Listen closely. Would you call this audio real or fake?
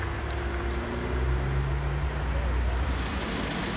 real